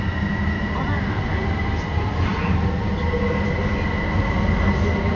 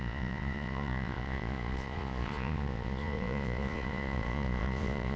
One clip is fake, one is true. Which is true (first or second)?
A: first